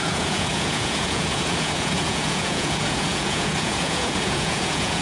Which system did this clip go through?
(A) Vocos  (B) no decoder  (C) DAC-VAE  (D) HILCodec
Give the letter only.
A